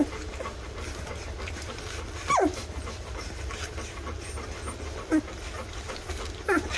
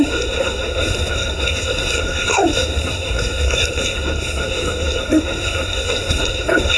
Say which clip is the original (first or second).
first